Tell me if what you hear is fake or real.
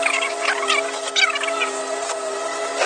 real